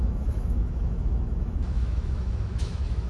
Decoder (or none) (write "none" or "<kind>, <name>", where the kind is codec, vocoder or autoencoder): autoencoder, DAC-VAE